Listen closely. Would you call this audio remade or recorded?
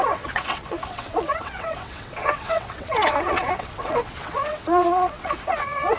remade